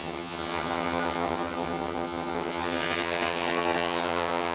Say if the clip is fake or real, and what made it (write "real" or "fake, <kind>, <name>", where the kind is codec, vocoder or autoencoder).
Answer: fake, vocoder, HiFi-GAN